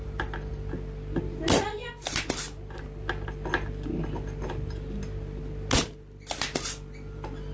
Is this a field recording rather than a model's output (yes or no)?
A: yes